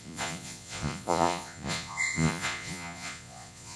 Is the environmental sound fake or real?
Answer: fake